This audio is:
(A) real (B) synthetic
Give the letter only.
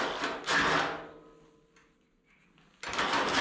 A